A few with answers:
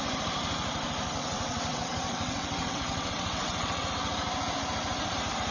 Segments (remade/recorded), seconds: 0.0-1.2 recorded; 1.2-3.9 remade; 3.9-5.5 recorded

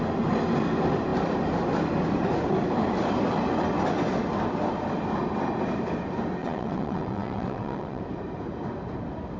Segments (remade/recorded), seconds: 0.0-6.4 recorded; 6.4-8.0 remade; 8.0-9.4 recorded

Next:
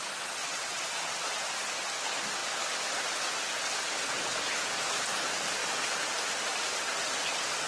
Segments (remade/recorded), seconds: 0.0-0.4 recorded; 0.4-1.4 remade; 1.4-7.7 recorded

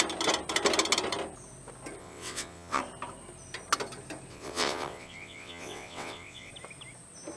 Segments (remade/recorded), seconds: 0.0-2.0 recorded; 2.0-2.8 remade; 2.8-4.3 recorded; 4.3-6.5 remade; 6.5-7.4 recorded